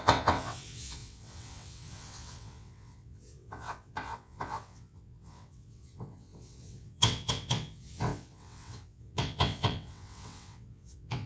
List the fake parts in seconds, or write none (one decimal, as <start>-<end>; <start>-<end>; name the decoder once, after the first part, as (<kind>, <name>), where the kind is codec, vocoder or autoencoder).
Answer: 0.0-11.3 (vocoder, WaveNeXt)